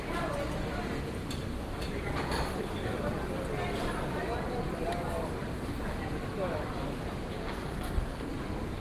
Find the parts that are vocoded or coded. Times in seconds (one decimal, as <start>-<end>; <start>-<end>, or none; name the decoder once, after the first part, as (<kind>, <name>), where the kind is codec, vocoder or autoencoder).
7.4-8.3 (codec, SNAC)